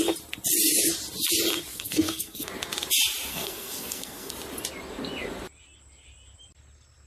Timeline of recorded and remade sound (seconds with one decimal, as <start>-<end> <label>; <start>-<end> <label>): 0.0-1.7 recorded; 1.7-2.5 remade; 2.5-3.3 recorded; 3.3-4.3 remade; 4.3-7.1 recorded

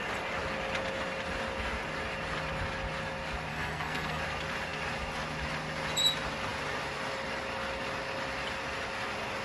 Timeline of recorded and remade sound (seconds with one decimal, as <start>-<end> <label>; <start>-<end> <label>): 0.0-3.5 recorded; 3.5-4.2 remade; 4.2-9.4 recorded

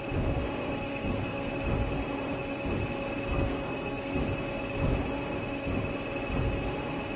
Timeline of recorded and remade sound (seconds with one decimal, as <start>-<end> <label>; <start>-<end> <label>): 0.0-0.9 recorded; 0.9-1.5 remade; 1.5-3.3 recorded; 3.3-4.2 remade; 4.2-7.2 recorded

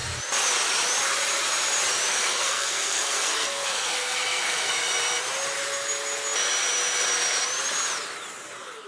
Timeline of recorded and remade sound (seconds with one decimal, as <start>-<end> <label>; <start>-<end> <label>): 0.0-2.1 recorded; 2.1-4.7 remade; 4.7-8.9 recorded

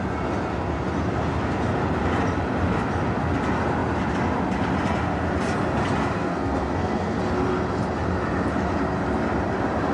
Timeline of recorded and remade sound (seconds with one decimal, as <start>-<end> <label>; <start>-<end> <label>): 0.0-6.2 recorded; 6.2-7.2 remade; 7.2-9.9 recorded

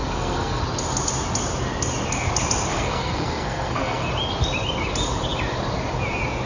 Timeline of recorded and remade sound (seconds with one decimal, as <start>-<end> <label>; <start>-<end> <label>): 0.0-0.6 remade; 0.6-2.7 recorded; 2.7-4.1 remade; 4.1-6.5 recorded

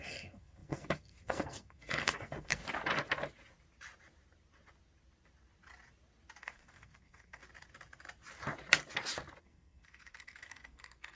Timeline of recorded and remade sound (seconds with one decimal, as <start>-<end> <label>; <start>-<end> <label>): 0.0-2.6 remade; 2.6-6.4 recorded; 6.4-7.4 remade; 7.4-9.4 recorded; 9.4-11.2 remade